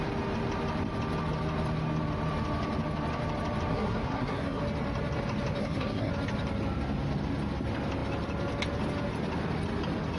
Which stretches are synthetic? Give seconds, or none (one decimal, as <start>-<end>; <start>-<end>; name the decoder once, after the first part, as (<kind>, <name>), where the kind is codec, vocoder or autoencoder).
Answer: 3.7-4.6 (codec, SNAC); 5.6-6.1